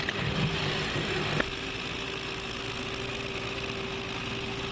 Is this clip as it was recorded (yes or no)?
yes